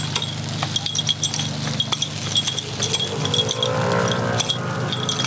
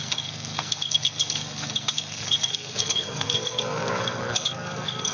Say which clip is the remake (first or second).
second